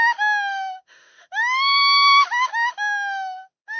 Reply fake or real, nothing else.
fake